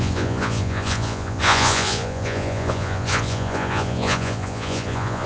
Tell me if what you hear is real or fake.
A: fake